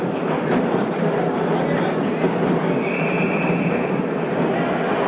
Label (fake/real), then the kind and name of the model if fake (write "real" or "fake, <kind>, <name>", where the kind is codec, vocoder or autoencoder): real